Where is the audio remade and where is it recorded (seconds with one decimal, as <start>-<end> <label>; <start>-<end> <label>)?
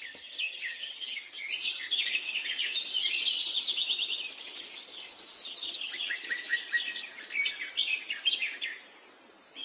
0.0-0.4 recorded; 0.4-1.5 remade; 1.5-5.4 recorded; 5.4-6.4 remade; 6.4-9.6 recorded